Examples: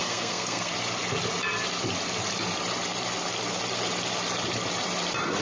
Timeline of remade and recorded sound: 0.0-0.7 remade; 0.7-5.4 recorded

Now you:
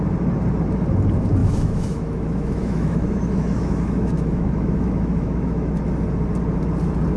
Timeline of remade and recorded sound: 0.0-1.4 recorded; 1.4-5.7 remade; 5.7-7.2 recorded

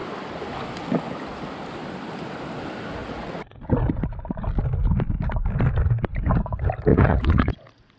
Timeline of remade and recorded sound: 0.0-3.0 recorded; 3.0-3.6 remade; 3.6-6.9 recorded; 6.9-7.5 remade; 7.5-8.0 recorded

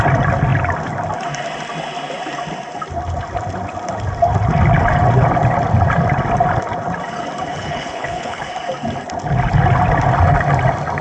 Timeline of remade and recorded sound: 0.0-7.5 recorded; 7.5-8.5 remade; 8.5-11.0 recorded

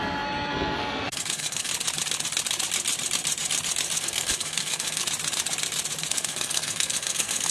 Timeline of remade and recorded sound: 0.0-1.7 remade; 1.7-4.0 recorded; 4.0-5.0 remade; 5.0-6.1 recorded; 6.1-7.5 remade

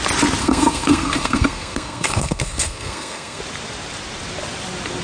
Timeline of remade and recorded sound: 0.0-0.4 recorded; 0.4-3.4 remade; 3.4-5.0 recorded